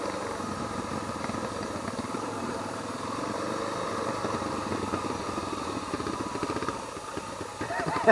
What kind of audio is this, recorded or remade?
recorded